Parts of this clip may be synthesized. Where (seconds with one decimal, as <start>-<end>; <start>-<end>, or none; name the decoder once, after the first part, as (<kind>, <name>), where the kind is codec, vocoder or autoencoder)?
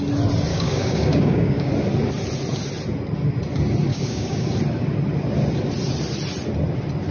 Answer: 0.5-1.7 (codec, DAC); 3.9-4.5